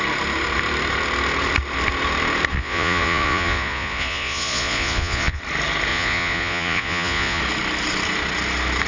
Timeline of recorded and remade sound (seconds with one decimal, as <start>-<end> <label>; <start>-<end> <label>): 0.0-2.5 recorded; 2.5-5.4 remade; 5.4-5.9 recorded; 5.9-7.4 remade; 7.4-8.9 recorded